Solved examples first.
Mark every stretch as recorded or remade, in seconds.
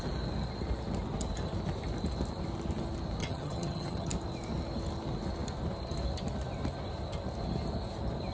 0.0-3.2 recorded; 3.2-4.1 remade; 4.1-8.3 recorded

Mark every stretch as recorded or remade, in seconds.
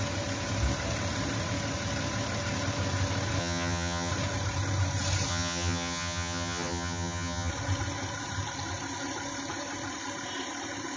0.0-3.4 recorded; 3.4-4.1 remade; 4.1-5.3 recorded; 5.3-7.5 remade; 7.5-11.0 recorded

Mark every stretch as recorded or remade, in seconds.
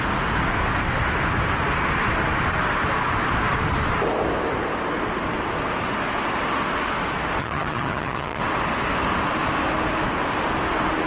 0.0-7.4 recorded; 7.4-8.4 remade; 8.4-11.1 recorded